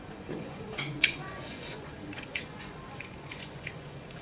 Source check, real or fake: fake